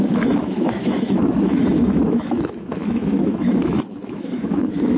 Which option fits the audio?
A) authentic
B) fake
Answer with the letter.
B